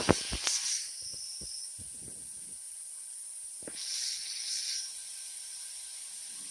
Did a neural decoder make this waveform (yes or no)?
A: no